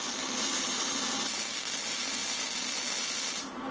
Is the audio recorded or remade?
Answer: recorded